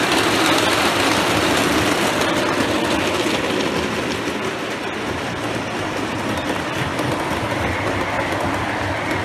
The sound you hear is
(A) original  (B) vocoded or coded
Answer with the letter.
A